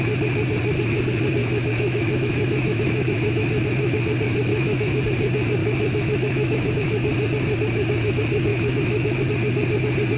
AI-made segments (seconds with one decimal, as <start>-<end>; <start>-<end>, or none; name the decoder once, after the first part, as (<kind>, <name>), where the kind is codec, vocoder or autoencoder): 1.4-4.0 (autoencoder, DAC-VAE); 4.5-5.0; 5.6-6.7; 8.5-9.2